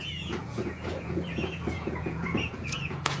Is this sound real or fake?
fake